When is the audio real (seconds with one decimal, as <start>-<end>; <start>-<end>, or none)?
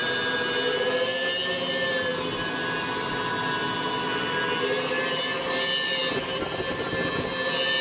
0.0-7.8